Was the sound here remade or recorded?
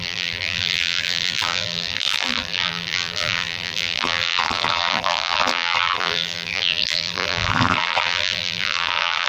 remade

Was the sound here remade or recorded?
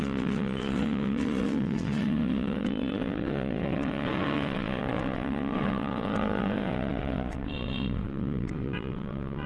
remade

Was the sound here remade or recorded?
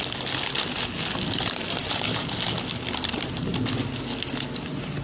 recorded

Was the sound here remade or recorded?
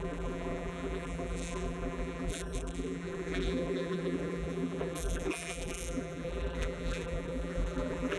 remade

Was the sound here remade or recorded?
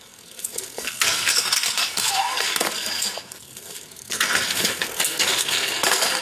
remade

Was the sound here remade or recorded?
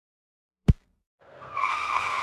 remade